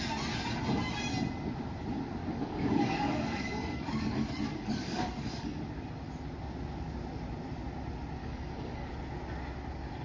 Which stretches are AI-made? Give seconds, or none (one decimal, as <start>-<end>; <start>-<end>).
2.2-5.6; 8.2-8.9